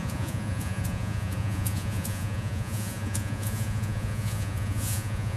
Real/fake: fake